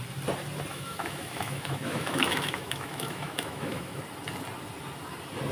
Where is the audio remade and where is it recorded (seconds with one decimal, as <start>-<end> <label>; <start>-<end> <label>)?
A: 0.0-0.7 recorded; 0.7-4.0 remade; 4.0-5.5 recorded